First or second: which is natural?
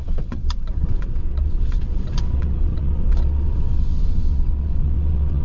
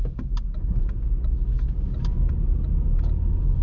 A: second